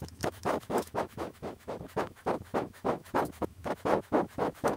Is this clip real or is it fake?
fake